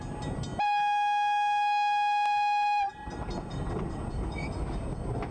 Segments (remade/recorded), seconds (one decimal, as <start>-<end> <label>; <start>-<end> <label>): 0.0-5.3 recorded